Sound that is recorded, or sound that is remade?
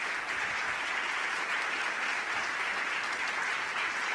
recorded